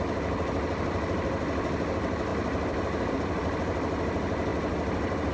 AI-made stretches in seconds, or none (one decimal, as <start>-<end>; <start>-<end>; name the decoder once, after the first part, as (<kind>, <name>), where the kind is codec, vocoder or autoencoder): none

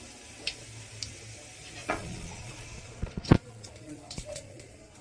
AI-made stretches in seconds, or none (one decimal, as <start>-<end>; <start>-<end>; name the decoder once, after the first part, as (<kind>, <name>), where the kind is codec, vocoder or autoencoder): 1.8-5.0 (vocoder, Vocos)

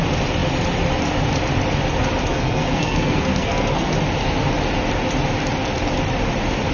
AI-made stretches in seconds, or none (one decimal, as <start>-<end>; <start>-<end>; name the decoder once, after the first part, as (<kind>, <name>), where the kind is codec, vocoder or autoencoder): 2.3-3.9 (codec, SNAC)

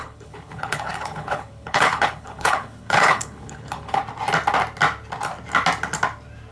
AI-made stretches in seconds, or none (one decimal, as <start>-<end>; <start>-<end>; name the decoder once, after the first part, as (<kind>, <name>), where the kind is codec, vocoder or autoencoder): 0.0-4.0 (codec, HILCodec)